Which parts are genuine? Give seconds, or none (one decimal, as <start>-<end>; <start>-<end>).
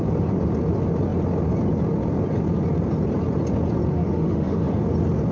0.0-3.9; 4.8-5.3